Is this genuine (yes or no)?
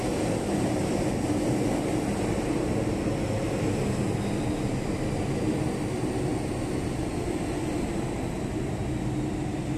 yes